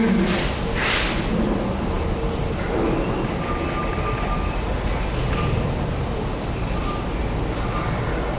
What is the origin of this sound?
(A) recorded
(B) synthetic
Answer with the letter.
A